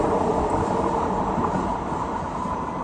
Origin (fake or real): real